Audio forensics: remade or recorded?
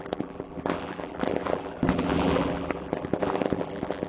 remade